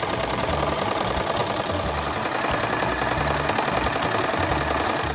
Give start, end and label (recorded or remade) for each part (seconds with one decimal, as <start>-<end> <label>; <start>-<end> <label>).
0.0-5.1 recorded